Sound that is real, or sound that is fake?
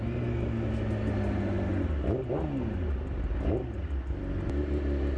real